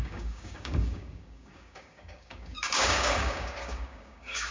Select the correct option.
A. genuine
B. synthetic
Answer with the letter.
B